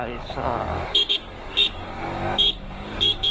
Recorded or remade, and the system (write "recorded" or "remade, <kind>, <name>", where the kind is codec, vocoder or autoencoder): remade, codec, DAC